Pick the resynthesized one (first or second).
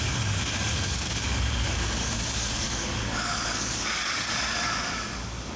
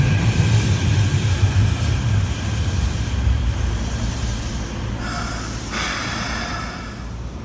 first